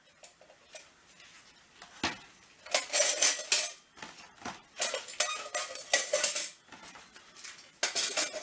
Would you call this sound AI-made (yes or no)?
no